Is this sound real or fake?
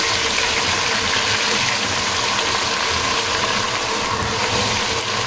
real